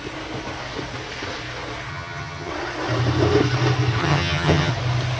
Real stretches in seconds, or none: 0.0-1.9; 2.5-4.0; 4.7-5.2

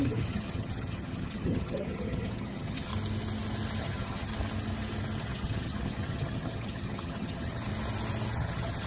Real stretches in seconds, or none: 2.9-3.8; 4.3-5.2; 7.7-8.3

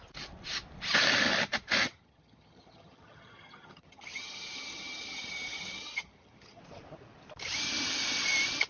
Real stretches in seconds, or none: 0.0-1.8; 6.6-8.7

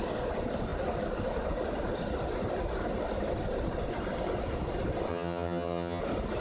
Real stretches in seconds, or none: 0.0-5.1; 6.0-6.4

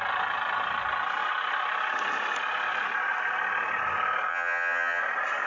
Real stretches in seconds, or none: 0.0-4.3; 5.0-5.5

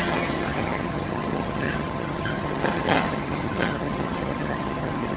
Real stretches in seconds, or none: none

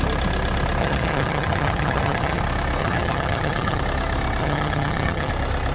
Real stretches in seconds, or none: 0.0-0.8; 2.4-2.8; 3.8-4.4; 5.3-5.7

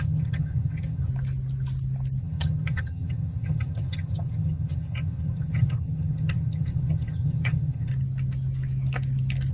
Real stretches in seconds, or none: 1.1-2.2; 7.9-9.5